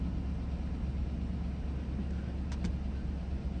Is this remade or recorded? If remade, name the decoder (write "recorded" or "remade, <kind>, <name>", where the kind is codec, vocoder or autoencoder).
recorded